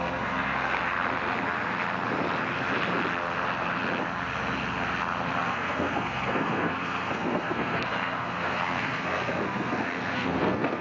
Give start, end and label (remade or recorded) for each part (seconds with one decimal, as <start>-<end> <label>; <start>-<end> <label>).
0.0-0.8 remade; 0.8-5.4 recorded; 5.4-10.8 remade